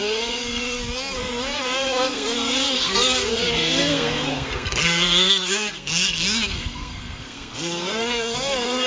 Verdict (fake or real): fake